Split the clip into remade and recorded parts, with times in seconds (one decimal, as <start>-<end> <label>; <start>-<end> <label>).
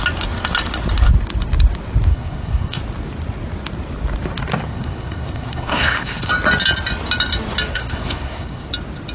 0.0-2.1 recorded; 2.1-2.8 remade; 2.8-4.7 recorded; 4.7-6.3 remade; 6.3-7.7 recorded; 7.7-8.7 remade; 8.7-9.1 recorded